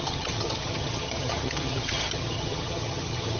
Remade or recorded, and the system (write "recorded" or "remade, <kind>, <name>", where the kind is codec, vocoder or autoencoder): remade, vocoder, HiFi-GAN